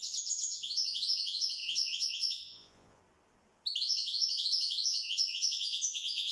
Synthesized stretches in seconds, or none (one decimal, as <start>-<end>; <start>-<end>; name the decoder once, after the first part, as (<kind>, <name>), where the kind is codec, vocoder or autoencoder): 0.0-3.0 (vocoder, Vocos); 3.8-6.3